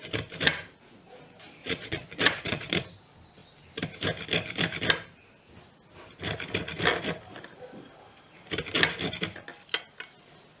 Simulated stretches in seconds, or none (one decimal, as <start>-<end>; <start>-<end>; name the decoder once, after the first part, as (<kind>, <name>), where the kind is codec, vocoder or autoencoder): 1.6-2.8 (vocoder, Vocos)